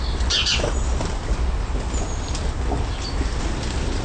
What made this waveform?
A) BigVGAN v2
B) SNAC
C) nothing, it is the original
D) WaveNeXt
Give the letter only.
C